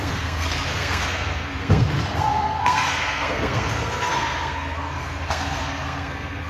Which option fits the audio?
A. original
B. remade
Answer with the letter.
B